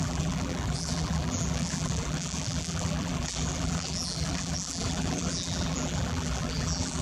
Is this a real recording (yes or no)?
no